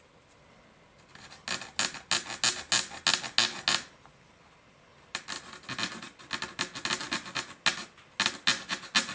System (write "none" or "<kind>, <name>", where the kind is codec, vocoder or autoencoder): none